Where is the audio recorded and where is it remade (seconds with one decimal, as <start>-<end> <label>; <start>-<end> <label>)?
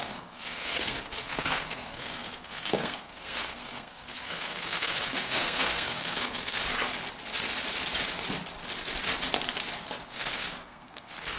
0.0-6.6 remade; 6.6-10.1 recorded; 10.1-11.4 remade